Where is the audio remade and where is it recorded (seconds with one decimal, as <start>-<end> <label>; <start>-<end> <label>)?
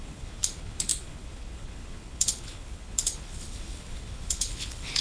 0.0-5.0 remade